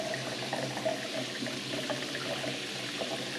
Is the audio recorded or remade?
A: recorded